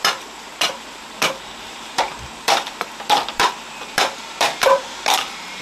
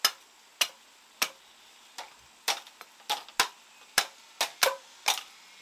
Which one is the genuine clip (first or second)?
second